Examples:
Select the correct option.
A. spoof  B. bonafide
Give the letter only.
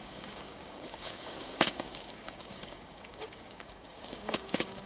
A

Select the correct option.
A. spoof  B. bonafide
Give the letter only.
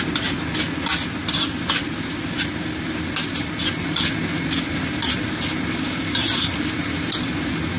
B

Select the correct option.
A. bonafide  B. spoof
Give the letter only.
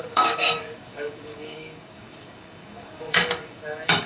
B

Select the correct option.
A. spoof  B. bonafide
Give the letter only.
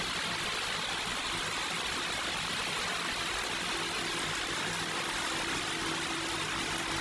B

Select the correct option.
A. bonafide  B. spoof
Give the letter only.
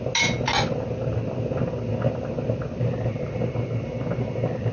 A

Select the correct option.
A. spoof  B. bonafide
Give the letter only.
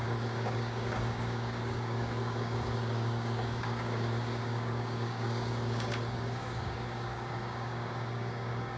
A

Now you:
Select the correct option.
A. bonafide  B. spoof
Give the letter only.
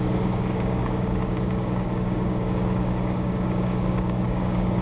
B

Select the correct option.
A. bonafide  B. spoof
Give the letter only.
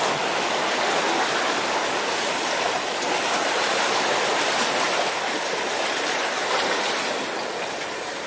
A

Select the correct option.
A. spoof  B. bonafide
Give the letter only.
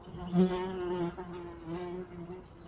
B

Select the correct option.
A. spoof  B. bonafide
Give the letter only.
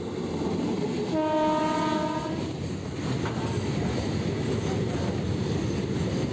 B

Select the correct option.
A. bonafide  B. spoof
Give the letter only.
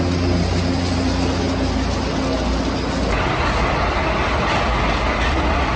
A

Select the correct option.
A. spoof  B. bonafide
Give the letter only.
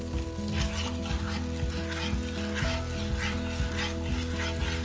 B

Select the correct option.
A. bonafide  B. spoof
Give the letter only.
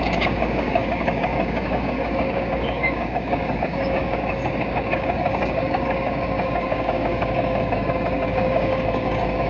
B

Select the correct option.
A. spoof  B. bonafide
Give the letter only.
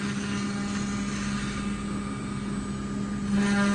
B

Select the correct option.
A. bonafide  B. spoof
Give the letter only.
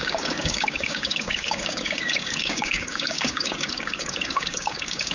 B